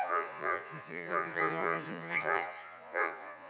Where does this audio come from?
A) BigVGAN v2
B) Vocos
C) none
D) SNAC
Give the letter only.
B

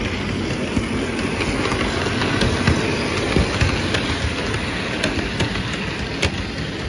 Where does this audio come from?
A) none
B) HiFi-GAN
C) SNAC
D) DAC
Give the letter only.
A